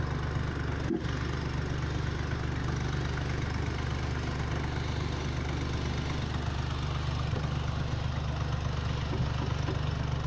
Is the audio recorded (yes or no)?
yes